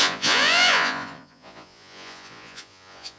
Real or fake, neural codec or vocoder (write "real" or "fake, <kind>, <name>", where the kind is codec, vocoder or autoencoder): fake, vocoder, Vocos